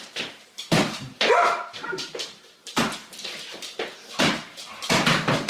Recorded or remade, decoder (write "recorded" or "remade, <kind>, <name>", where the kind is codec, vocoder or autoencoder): remade, vocoder, BigVGAN v2